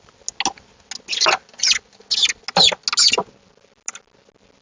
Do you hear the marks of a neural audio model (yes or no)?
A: no